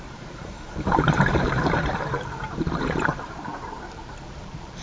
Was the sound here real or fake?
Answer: fake